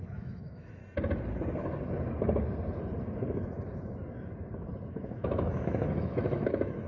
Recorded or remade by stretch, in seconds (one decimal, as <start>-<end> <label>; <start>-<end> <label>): 0.0-0.8 remade; 0.8-4.9 recorded; 4.9-6.9 remade